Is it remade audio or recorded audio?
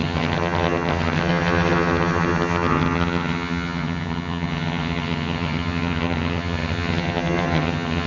remade